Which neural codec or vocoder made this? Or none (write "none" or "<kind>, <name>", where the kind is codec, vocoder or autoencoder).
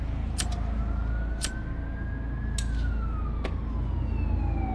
none